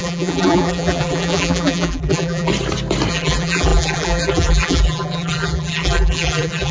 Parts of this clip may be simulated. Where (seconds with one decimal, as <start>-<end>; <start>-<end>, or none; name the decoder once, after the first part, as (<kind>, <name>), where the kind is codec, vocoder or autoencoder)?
0.0-2.5 (vocoder, BigVGAN v2); 3.1-6.7